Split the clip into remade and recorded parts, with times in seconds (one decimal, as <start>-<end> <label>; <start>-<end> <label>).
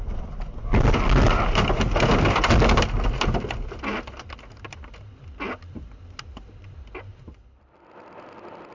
0.0-8.7 recorded